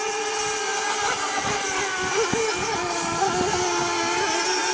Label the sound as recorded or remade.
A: recorded